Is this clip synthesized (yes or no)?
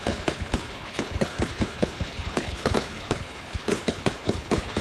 yes